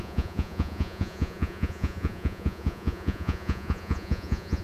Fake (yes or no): yes